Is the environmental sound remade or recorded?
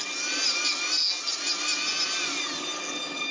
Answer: recorded